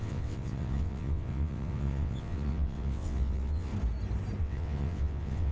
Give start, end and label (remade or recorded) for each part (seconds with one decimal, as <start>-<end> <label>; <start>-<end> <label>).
0.0-3.7 remade; 3.7-4.4 recorded; 4.4-5.5 remade